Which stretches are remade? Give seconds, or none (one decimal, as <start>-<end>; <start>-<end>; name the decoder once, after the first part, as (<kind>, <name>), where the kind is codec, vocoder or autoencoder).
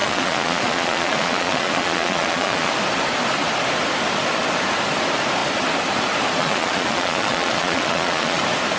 0.0-2.7 (vocoder, Vocos); 6.4-8.4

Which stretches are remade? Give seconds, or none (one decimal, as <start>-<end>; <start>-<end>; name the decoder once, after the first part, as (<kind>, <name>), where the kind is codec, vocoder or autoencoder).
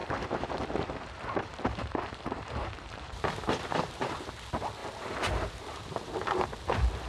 0.0-4.3 (vocoder, BigVGAN v2); 4.8-6.1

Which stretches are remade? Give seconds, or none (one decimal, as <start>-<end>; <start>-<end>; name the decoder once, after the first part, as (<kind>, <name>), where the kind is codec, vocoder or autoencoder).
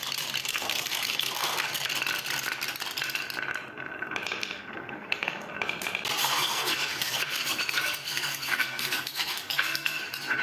0.4-1.9 (codec, SNAC); 4.4-5.5; 6.2-10.0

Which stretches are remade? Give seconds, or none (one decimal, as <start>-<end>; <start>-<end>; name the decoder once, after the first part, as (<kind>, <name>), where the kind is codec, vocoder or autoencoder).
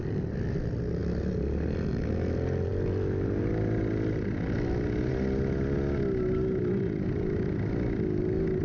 none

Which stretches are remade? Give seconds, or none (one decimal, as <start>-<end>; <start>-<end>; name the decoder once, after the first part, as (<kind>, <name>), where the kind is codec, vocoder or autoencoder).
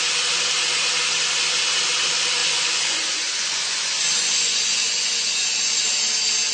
2.4-5.8 (vocoder, Vocos)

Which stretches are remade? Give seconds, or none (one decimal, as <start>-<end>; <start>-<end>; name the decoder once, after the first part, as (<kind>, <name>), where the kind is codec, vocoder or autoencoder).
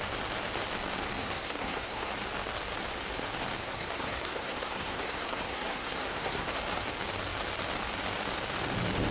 1.2-2.1 (codec, SNAC); 3.6-6.6